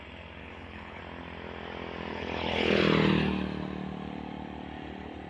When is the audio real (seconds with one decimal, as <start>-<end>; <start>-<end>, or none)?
0.0-0.4; 1.0-2.1; 2.8-5.3